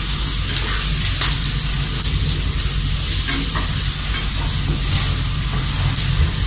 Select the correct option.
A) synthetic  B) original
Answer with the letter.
B